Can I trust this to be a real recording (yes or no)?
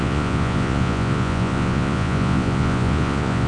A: no